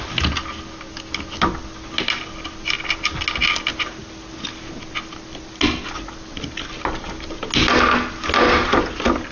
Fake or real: real